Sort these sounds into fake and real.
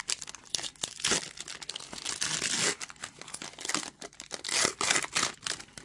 real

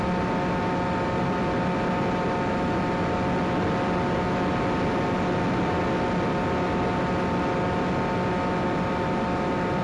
real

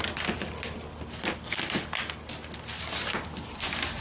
real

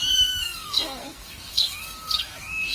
fake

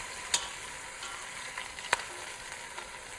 real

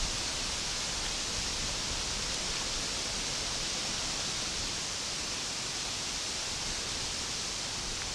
real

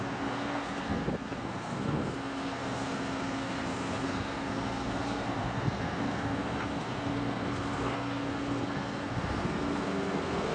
fake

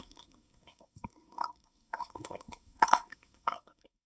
fake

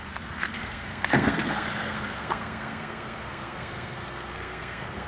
fake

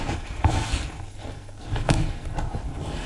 fake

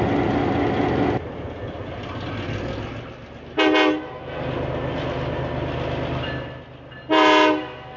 real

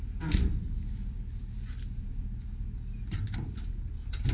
real